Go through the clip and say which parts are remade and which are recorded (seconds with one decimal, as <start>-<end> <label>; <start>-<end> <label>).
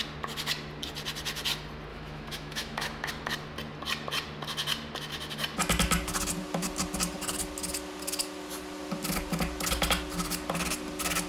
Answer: 0.0-1.9 recorded; 1.9-3.1 remade; 3.1-11.3 recorded